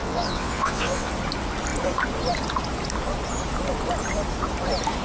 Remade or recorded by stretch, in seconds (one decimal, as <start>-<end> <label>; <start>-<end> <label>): 0.0-1.1 remade; 1.1-5.0 recorded